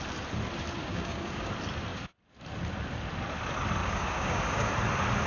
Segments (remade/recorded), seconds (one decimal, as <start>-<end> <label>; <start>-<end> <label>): 0.0-0.8 recorded; 0.8-1.5 remade; 1.5-3.8 recorded; 3.8-4.7 remade; 4.7-5.3 recorded